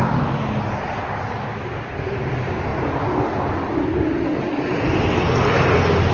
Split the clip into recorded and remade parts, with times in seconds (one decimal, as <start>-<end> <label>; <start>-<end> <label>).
0.0-6.1 recorded